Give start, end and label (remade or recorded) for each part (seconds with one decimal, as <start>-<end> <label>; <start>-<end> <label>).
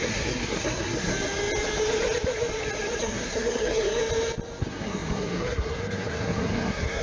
0.0-1.1 remade; 1.1-3.0 recorded; 3.0-4.0 remade; 4.0-4.6 recorded; 4.6-7.0 remade